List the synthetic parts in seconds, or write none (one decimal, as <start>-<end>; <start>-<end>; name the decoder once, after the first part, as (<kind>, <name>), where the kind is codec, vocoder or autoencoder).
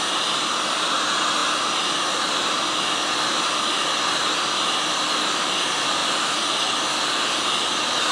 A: none